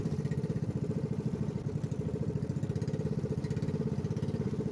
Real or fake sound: fake